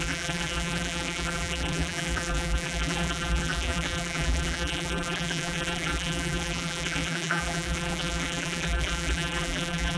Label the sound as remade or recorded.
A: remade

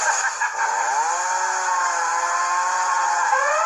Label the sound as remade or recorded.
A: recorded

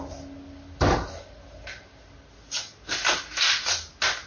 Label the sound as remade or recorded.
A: recorded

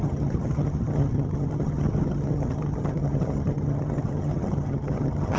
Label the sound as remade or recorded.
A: remade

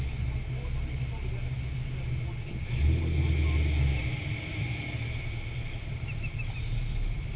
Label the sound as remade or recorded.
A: recorded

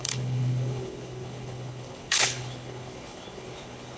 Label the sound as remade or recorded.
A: remade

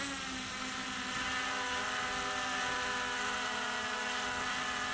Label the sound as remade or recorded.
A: recorded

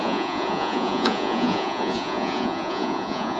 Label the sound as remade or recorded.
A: remade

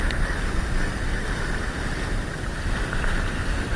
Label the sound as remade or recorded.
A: recorded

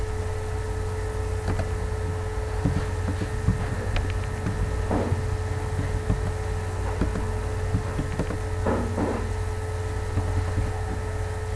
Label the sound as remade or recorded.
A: recorded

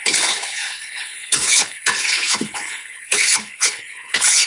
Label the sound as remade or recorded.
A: remade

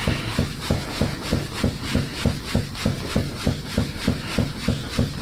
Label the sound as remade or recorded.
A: recorded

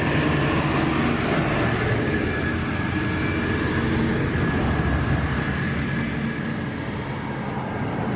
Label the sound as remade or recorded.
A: recorded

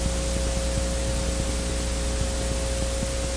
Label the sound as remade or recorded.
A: recorded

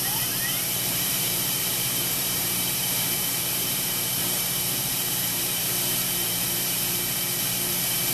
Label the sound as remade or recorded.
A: remade